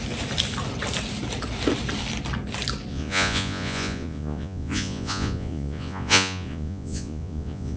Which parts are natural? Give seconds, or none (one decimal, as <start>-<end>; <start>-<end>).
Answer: 0.0-2.9